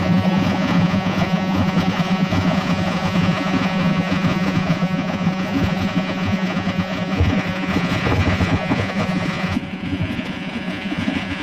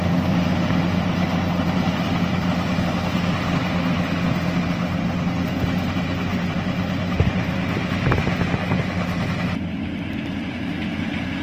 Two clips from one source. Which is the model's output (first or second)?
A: first